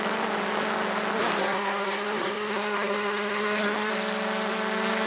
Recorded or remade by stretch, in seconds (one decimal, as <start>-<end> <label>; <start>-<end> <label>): 0.0-1.4 recorded; 1.4-3.9 remade; 3.9-5.1 recorded